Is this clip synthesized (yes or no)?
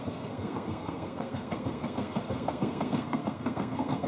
yes